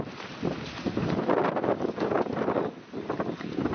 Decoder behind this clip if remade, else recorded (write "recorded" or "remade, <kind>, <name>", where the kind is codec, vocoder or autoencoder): recorded